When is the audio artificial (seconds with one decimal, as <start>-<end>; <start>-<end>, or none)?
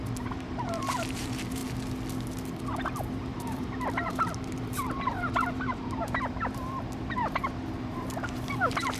0.0-1.6; 2.7-9.0